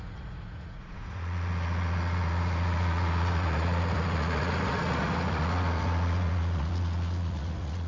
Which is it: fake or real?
fake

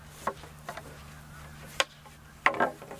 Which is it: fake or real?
real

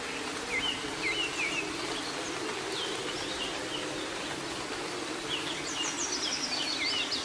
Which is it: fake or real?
real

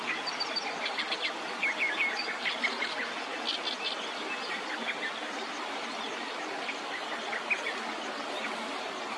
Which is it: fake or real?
real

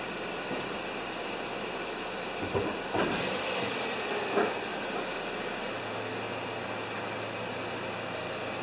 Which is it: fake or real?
real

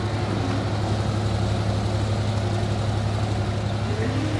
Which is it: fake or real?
real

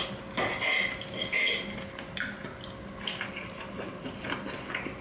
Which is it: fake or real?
real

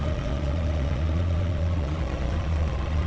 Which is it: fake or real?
fake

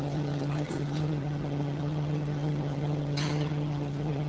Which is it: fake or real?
fake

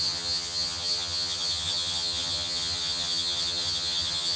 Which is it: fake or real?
fake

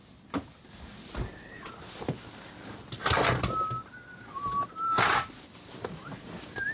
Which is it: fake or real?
real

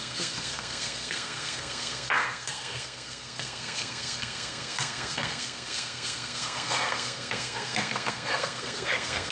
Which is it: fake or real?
fake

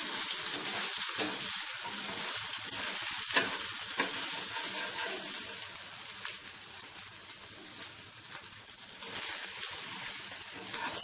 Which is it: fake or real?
real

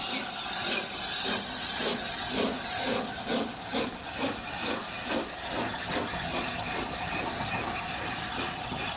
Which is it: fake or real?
real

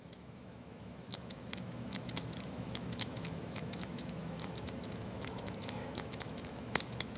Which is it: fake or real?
fake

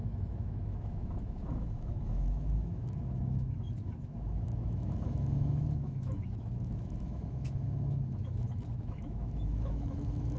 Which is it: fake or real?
fake